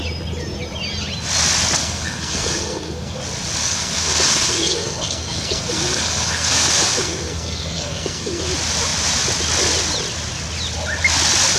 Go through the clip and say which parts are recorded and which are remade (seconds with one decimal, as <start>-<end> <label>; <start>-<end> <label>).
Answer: 0.0-1.8 recorded; 1.8-3.2 remade; 3.2-3.6 recorded; 3.6-8.4 remade; 8.4-11.6 recorded